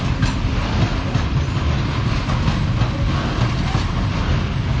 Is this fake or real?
real